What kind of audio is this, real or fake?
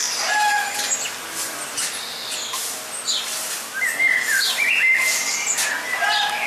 real